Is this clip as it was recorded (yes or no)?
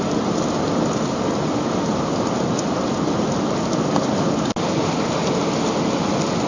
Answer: yes